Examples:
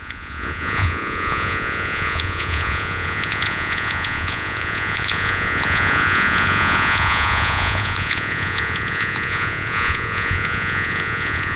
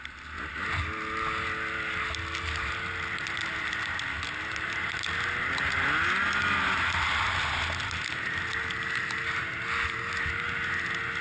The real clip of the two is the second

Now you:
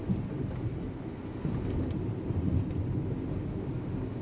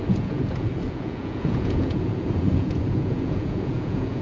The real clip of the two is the first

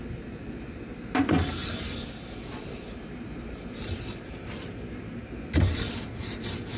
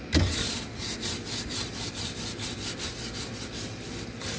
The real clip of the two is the second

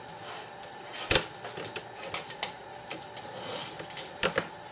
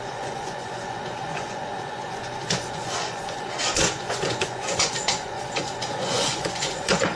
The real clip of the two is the first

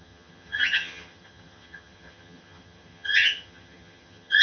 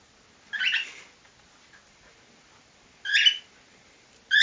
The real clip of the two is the second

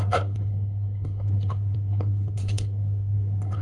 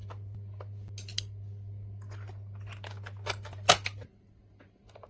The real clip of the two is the second